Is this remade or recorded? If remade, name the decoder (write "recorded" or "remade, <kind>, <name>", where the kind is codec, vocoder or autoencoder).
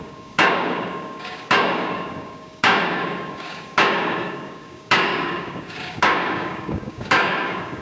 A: remade, codec, DAC